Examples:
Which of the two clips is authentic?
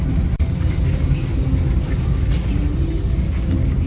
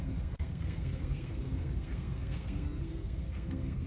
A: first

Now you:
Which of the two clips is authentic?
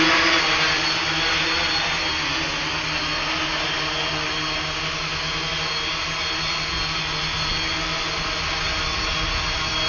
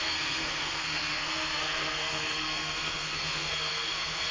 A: first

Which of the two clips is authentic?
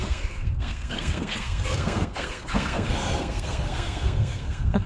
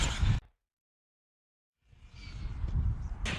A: second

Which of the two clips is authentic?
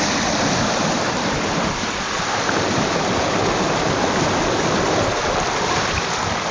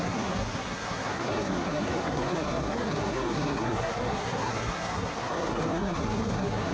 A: first